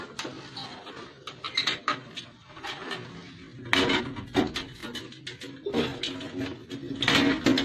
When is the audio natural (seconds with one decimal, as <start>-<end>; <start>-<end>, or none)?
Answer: 0.0-0.6; 2.9-7.6